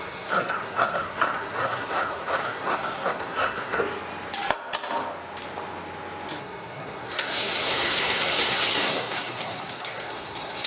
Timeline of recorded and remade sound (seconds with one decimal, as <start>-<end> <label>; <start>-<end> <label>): 0.0-3.8 remade; 3.8-6.4 recorded; 6.4-10.7 remade